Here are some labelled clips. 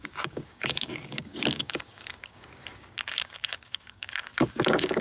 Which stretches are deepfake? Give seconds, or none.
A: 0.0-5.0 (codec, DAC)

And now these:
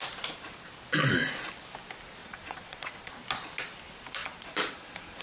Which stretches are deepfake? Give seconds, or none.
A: 2.2-3.1 (vocoder, Vocos); 4.2-5.2